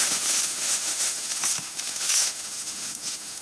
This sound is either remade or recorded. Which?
remade